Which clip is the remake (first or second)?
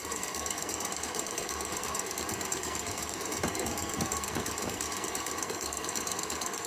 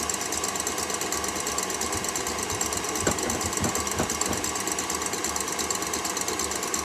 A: first